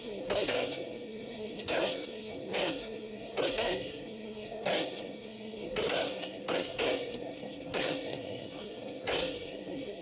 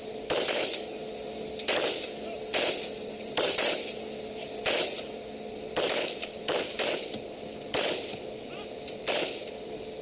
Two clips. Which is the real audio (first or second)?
second